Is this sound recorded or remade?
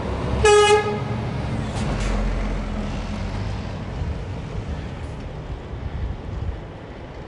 recorded